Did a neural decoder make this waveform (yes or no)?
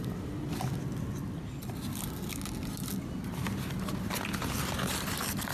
no